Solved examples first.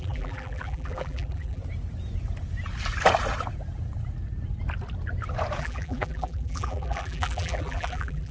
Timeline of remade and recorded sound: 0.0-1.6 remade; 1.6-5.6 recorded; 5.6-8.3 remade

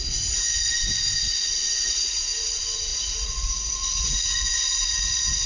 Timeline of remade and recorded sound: 0.0-0.5 remade; 0.5-1.2 recorded; 1.2-5.5 remade

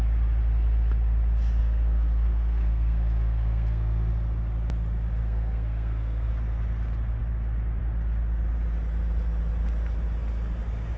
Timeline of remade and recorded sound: 0.0-1.6 recorded; 1.6-4.1 remade; 4.1-5.2 recorded; 5.2-6.3 remade; 6.3-11.0 recorded

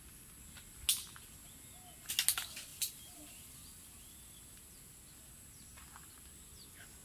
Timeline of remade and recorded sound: 0.0-7.0 recorded

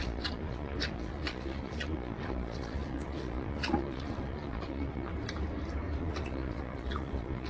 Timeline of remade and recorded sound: 0.0-5.1 remade; 5.1-6.0 recorded; 6.0-7.5 remade